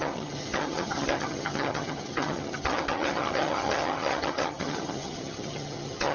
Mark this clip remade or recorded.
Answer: remade